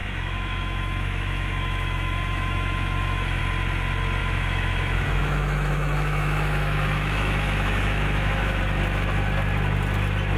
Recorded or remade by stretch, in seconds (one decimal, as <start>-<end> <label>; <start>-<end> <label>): 0.0-3.4 remade; 3.4-4.2 recorded; 4.2-8.6 remade; 8.6-10.4 recorded